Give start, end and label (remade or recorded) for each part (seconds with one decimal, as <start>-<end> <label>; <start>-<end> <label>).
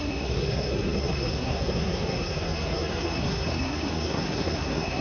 0.0-5.0 remade